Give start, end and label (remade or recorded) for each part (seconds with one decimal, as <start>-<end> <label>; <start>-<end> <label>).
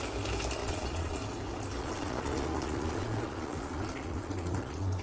0.0-0.6 recorded; 0.6-1.2 remade; 1.2-1.8 recorded; 1.8-5.0 remade